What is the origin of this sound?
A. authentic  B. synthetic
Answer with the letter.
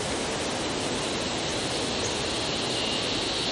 A